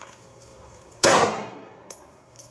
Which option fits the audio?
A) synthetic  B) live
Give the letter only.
A